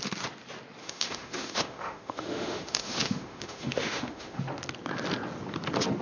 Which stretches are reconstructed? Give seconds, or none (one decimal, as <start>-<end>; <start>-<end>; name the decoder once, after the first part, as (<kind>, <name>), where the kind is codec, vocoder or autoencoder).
0.8-4.4 (autoencoder, DAC-VAE)

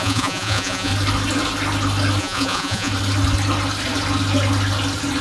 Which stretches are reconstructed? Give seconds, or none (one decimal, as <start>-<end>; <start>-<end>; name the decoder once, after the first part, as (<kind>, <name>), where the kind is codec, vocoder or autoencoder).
0.0-0.9 (vocoder, Vocos); 2.2-2.9

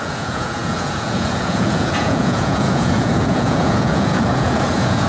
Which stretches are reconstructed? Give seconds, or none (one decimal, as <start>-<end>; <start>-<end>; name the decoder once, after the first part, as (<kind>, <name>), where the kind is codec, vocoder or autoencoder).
0.0-5.1 (vocoder, Vocos)

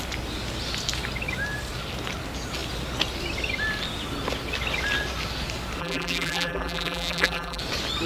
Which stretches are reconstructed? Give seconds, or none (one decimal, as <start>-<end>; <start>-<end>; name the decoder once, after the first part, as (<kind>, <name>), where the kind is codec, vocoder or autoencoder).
5.8-7.6 (vocoder, BigVGAN v2)

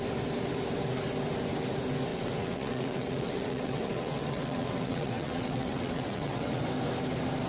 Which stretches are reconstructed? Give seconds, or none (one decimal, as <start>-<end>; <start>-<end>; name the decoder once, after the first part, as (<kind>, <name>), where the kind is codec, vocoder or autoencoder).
2.1-6.6 (vocoder, WaveNeXt)

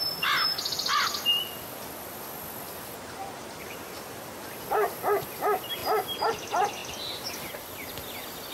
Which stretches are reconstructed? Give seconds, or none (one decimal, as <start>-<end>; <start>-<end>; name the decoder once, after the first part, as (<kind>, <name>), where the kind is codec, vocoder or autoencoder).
6.8-7.7 (vocoder, BigVGAN v2)